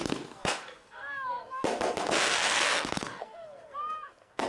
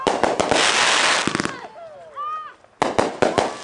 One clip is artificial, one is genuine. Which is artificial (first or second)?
first